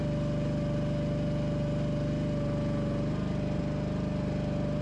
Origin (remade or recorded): recorded